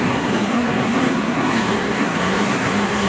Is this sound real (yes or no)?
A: no